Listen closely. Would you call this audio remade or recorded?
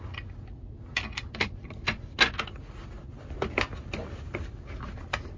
recorded